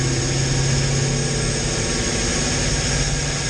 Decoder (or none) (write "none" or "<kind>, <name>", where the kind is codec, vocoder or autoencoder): none